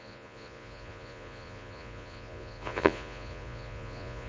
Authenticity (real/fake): fake